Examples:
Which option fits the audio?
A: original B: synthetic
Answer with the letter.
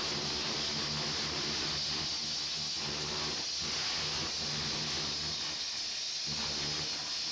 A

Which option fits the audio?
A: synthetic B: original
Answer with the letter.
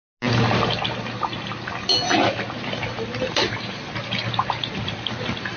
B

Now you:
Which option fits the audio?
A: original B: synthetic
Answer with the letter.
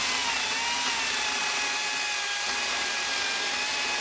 A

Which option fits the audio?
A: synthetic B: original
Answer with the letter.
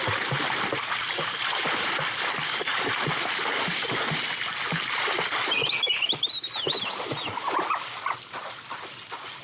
B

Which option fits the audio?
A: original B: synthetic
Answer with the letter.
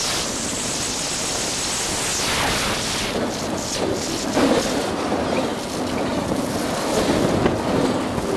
A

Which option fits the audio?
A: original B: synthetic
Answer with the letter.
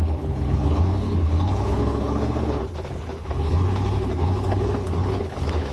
B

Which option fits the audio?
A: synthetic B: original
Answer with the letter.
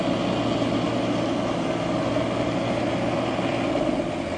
B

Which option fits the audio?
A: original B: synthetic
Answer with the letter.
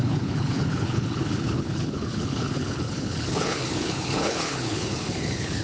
B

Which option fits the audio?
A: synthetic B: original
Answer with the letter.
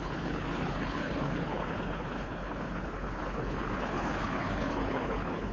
A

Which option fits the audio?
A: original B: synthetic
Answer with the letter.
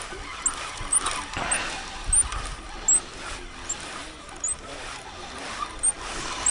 A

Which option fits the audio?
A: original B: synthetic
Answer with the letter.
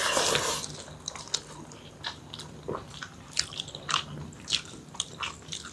A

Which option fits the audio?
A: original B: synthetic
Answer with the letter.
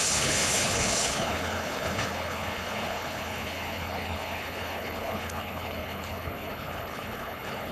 B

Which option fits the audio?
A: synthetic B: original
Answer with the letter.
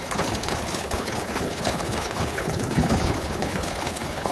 A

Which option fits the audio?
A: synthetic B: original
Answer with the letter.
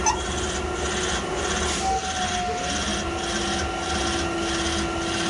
B